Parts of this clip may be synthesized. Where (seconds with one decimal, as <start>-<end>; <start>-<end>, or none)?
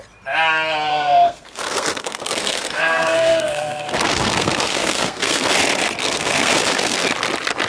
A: 0.9-5.5; 6.0-7.1